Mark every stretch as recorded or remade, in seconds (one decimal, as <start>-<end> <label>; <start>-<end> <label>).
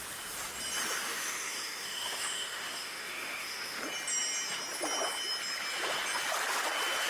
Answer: 0.0-1.1 recorded; 1.1-3.8 remade; 3.8-7.1 recorded